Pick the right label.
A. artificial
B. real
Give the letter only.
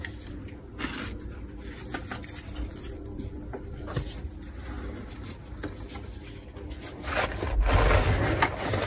B